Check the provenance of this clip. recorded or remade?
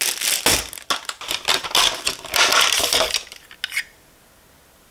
recorded